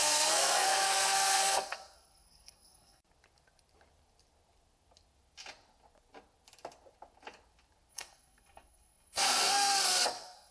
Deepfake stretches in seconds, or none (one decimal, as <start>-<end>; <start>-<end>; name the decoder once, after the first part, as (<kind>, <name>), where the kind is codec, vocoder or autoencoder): 0.0-3.0 (codec, SNAC); 7.9-10.5